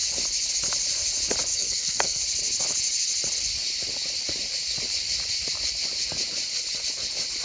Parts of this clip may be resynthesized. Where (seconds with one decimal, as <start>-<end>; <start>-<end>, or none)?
1.5-2.2